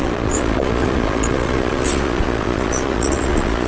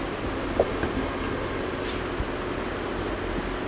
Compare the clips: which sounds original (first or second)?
second